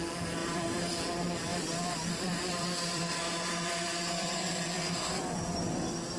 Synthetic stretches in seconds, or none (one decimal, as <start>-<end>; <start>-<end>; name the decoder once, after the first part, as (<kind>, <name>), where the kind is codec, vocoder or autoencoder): 0.4-0.9 (vocoder, BigVGAN v2); 1.5-5.2